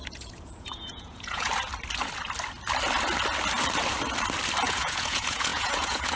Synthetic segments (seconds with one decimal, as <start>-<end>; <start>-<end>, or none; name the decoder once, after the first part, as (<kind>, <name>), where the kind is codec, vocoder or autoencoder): 0.0-1.5 (vocoder, Vocos); 4.7-6.2